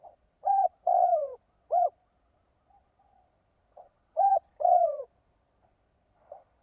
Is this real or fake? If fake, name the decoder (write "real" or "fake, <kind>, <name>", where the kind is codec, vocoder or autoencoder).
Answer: fake, vocoder, Vocos